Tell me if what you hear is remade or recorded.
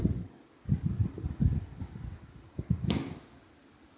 recorded